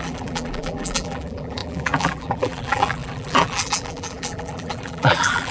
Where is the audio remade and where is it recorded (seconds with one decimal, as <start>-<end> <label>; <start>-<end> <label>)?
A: 0.0-5.5 remade